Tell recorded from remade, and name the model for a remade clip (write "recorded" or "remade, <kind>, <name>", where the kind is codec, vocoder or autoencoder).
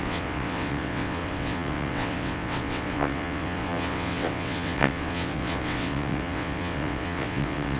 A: remade, vocoder, WaveNeXt